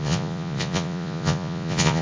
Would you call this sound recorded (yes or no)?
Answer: no